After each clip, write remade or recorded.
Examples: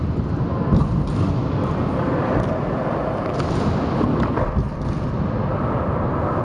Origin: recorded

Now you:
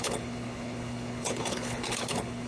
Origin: remade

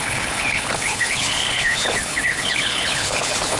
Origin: remade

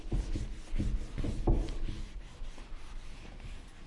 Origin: recorded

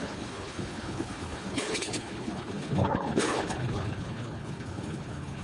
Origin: remade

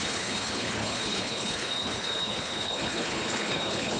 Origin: remade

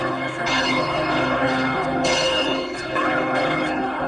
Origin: remade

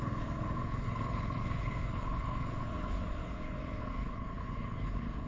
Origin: remade